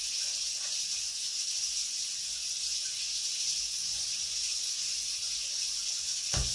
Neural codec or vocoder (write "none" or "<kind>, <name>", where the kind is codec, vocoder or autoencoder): vocoder, Vocos